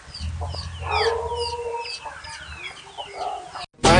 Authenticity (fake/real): real